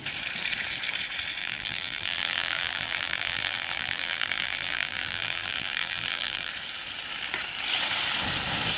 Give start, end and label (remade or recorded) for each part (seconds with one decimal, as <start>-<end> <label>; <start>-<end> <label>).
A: 0.0-1.4 recorded; 1.4-6.5 remade; 6.5-8.8 recorded